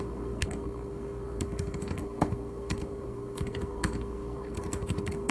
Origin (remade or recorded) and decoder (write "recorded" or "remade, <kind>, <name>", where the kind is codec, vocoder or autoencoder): remade, codec, SNAC